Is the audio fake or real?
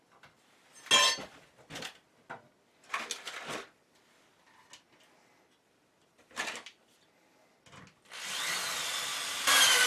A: real